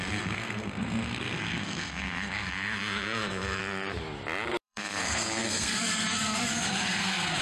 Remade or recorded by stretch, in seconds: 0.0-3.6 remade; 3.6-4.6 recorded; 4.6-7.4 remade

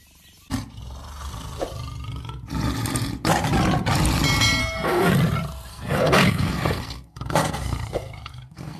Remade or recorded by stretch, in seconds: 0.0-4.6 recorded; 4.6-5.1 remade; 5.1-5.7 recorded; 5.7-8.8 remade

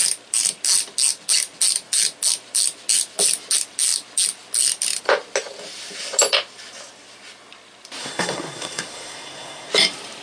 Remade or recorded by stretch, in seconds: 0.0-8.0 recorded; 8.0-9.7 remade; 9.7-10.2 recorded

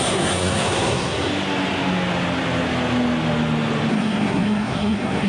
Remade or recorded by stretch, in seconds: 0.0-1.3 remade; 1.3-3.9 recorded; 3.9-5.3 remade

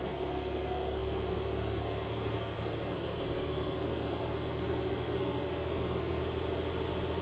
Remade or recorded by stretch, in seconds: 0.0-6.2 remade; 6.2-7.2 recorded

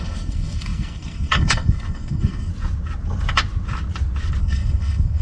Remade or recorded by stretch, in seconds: 0.0-2.5 remade; 2.5-4.4 recorded; 4.4-5.2 remade

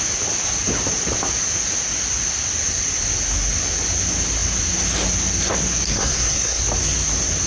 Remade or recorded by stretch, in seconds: 0.0-5.9 recorded; 5.9-6.6 remade; 6.6-7.5 recorded

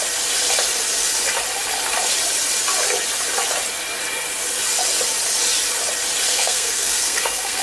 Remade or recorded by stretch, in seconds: 0.0-6.3 recorded; 6.3-7.6 remade